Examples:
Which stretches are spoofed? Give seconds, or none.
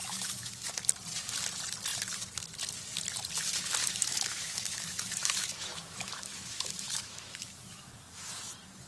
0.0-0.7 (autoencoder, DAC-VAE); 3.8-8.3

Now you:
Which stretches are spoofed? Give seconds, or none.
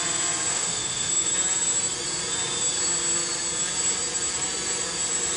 0.5-1.3 (autoencoder, DAC-VAE)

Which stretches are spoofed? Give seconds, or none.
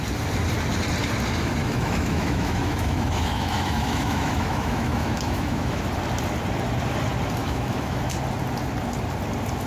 1.6-5.8 (autoencoder, DAC-VAE); 7.4-8.0